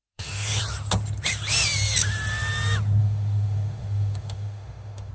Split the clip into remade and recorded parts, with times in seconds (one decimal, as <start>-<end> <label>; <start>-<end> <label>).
0.0-0.6 remade; 0.6-3.0 recorded; 3.0-5.1 remade